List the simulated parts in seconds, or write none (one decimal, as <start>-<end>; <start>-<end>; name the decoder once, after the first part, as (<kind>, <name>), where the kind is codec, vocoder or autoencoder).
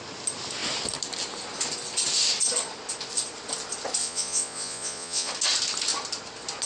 4.0-5.3 (vocoder, Vocos)